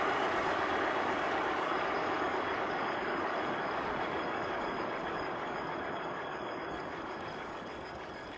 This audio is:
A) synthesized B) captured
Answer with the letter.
A